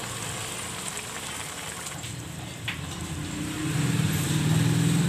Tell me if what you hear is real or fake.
real